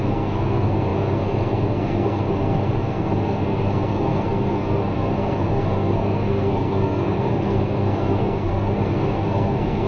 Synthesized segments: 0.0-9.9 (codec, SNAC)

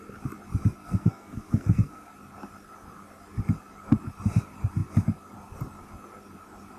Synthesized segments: 0.8-2.1 (codec, SNAC)

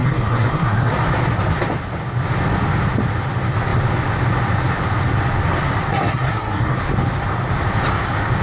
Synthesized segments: 0.0-0.9 (codec, SNAC); 5.9-6.8

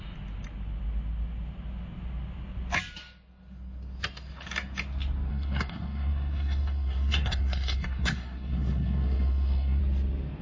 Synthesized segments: 5.3-9.8 (codec, SNAC)

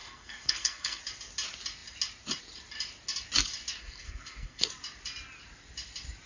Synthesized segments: 0.0-1.0 (codec, SNAC); 3.8-4.7

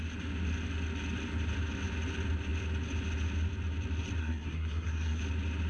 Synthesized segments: 4.2-5.2 (codec, SNAC)

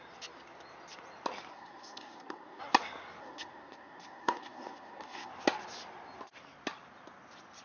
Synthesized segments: 1.5-2.6 (codec, SNAC); 3.2-5.3

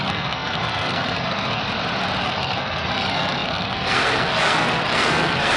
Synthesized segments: 0.0-1.6 (codec, SNAC); 2.2-5.6